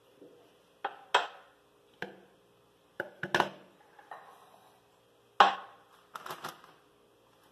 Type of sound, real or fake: real